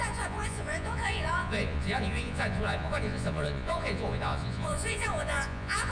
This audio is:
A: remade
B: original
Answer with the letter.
A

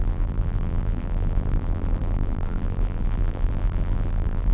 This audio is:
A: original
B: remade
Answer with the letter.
B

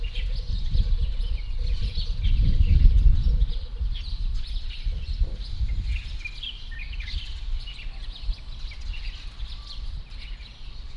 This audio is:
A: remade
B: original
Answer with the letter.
B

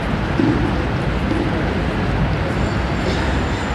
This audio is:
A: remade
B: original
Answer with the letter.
B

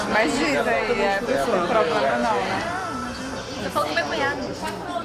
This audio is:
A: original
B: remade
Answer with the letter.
A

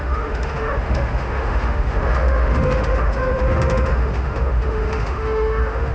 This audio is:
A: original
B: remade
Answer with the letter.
B